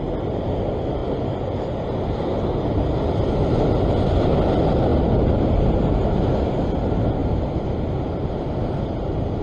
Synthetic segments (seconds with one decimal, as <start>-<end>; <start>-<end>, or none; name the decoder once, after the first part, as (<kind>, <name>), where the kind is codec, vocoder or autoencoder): 1.0-4.0 (vocoder, BigVGAN v2); 4.9-5.7